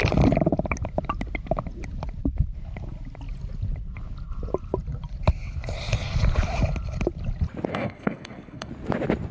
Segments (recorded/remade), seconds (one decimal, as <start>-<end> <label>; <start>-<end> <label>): 0.0-7.7 recorded; 7.7-8.7 remade; 8.7-9.3 recorded